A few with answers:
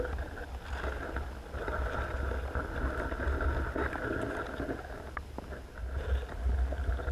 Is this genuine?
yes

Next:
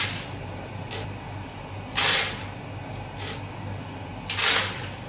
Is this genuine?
yes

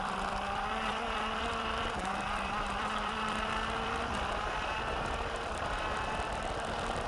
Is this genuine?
no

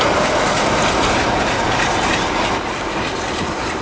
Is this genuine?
yes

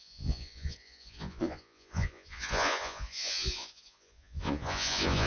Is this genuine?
no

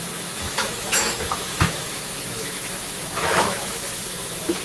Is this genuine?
no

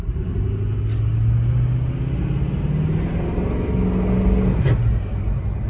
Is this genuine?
yes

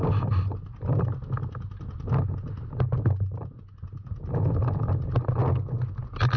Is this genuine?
yes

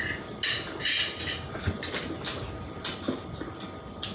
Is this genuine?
yes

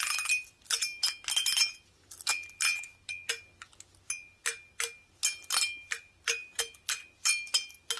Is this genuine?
yes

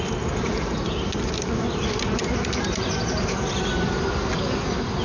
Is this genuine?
yes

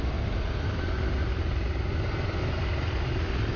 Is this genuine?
yes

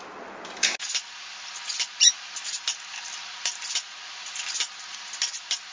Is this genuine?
yes